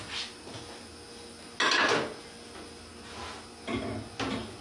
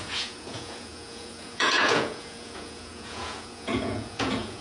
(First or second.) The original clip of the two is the first